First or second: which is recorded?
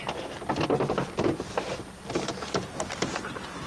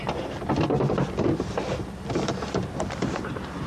first